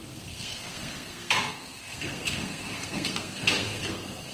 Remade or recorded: remade